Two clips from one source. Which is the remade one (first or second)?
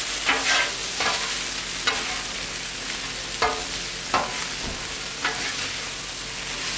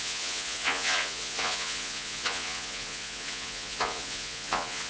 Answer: second